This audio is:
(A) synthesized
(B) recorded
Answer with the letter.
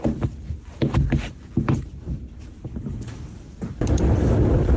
B